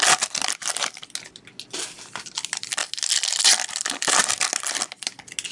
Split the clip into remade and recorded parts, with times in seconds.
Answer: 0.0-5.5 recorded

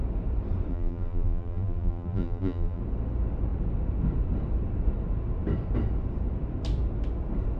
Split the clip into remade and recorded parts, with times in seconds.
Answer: 0.0-0.7 recorded; 0.7-2.8 remade; 2.8-7.6 recorded

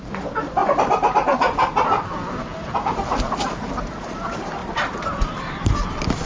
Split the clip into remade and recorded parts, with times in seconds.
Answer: 0.0-6.3 recorded

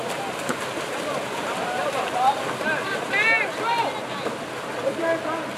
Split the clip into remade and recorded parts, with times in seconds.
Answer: 0.0-3.1 remade; 3.1-5.6 recorded